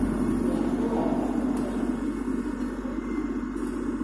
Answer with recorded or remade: recorded